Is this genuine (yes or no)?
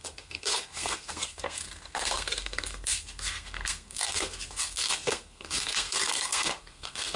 no